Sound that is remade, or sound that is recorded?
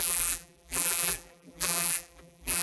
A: remade